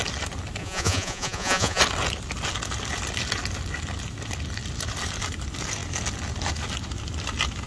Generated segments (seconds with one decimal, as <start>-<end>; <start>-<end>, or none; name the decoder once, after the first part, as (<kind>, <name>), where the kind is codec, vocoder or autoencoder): 0.6-1.8 (vocoder, Vocos)